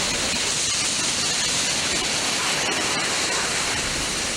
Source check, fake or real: real